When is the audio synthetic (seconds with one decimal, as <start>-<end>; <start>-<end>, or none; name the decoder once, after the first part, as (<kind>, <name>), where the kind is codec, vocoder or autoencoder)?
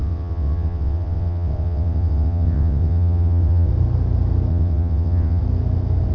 0.0-3.7 (vocoder, WaveNeXt); 4.5-5.4